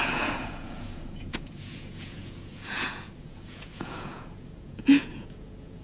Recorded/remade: remade